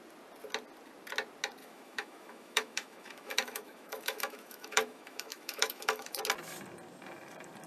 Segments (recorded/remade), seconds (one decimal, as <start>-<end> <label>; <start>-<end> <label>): 0.0-1.6 recorded; 1.6-6.2 remade; 6.2-7.7 recorded